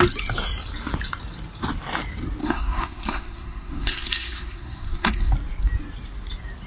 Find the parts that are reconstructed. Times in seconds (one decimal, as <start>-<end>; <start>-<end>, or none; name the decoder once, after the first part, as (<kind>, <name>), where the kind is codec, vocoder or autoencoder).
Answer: 2.4-5.3 (codec, SNAC)